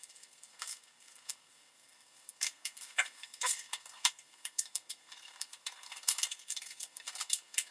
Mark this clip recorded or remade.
remade